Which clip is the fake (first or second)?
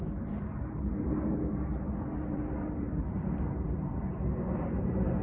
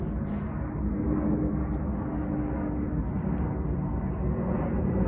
first